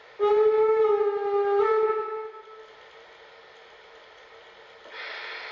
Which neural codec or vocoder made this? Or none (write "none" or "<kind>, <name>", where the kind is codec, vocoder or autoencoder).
none